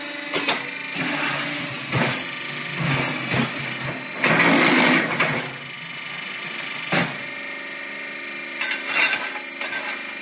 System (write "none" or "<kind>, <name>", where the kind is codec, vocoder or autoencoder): none